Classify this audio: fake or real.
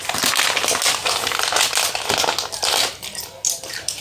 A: real